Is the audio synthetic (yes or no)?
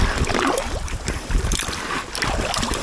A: yes